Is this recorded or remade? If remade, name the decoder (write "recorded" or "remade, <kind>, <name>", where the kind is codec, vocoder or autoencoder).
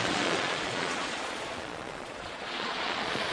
remade, vocoder, Vocos